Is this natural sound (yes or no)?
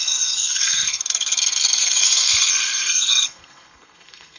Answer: no